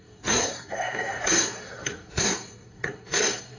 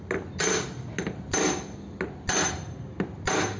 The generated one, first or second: first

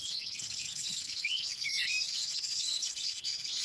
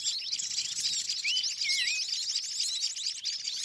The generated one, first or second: first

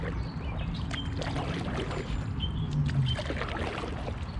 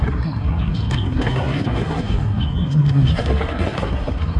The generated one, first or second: second